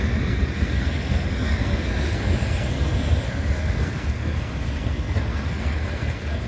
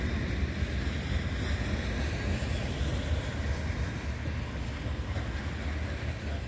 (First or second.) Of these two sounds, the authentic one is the second